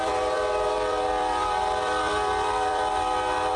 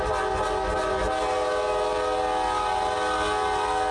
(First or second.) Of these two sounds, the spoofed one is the first